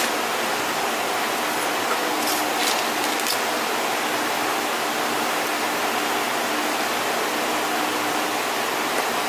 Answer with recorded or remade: recorded